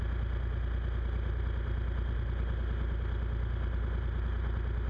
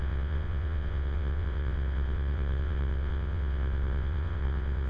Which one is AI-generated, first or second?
second